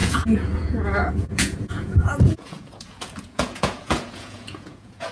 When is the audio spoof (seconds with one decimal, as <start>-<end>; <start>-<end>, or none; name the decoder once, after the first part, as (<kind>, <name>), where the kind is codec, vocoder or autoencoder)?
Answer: 0.0-5.1 (vocoder, Vocos)